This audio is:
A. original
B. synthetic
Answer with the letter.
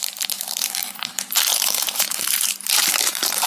B